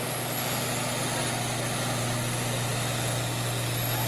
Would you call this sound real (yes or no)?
yes